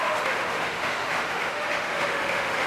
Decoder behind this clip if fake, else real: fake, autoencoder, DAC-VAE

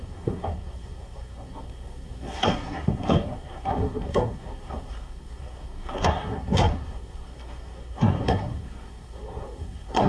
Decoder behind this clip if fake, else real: fake, codec, SNAC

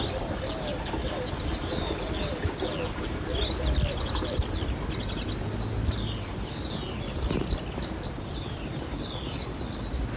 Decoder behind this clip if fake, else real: real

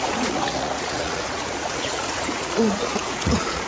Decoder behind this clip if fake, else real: fake, vocoder, Vocos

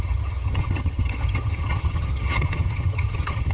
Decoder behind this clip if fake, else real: fake, vocoder, HiFi-GAN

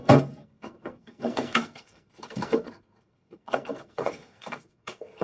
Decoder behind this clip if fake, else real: fake, codec, SNAC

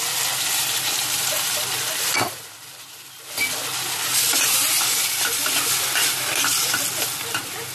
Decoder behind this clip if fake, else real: real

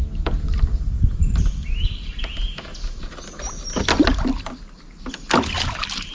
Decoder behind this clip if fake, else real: real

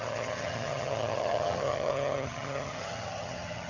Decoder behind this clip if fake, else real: fake, vocoder, HiFi-GAN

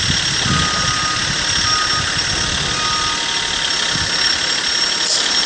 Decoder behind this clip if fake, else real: real